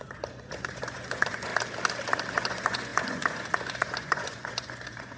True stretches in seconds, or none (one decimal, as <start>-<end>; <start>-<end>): 1.5-2.3